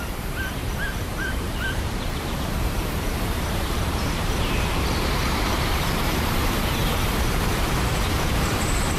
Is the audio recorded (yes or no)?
no